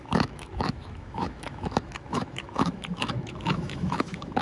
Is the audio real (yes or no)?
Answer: no